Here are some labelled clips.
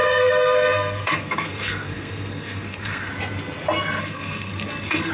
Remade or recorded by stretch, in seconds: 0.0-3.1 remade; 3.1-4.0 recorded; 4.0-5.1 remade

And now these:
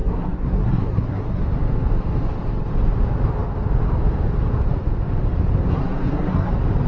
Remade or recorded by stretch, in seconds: 0.0-1.4 remade; 1.4-5.7 recorded; 5.7-6.5 remade; 6.5-6.9 recorded

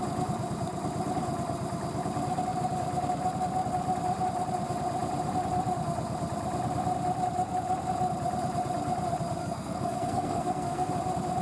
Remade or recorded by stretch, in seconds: 0.0-9.4 recorded; 9.4-10.9 remade; 10.9-11.4 recorded

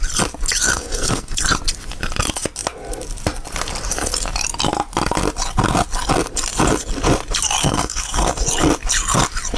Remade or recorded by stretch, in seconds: 0.0-0.7 recorded; 0.7-1.4 remade; 1.4-7.6 recorded; 7.6-8.3 remade; 8.3-9.6 recorded

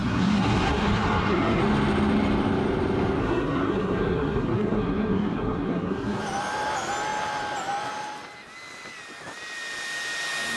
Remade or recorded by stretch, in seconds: 0.0-1.6 remade; 1.6-3.2 recorded; 3.2-6.2 remade; 6.2-10.6 recorded